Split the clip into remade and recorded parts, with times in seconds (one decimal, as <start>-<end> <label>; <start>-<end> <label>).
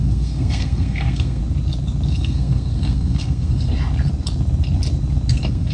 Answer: 0.0-1.4 remade; 1.4-2.1 recorded; 2.1-3.7 remade; 3.7-5.3 recorded; 5.3-5.7 remade